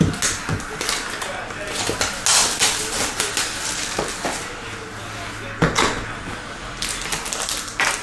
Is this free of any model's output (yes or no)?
yes